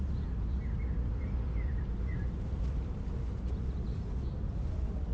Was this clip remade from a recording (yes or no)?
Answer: no